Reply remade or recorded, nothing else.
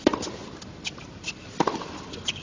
recorded